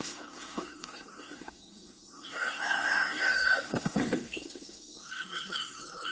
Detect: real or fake fake